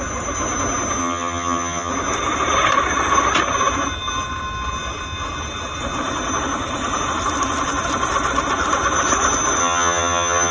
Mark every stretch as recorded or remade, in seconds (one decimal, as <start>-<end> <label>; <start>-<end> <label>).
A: 0.0-1.0 recorded; 1.0-1.9 remade; 1.9-9.6 recorded; 9.6-10.5 remade